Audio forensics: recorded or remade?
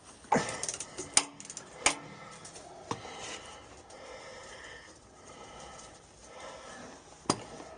recorded